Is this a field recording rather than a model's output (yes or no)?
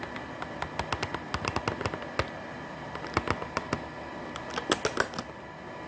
yes